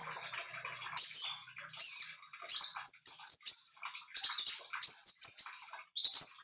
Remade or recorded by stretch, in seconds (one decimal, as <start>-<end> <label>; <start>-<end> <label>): 0.0-6.4 recorded